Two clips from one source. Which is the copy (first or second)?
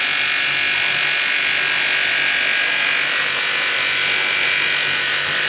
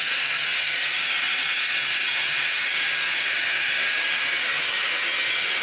second